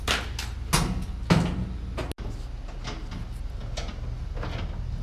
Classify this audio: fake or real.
real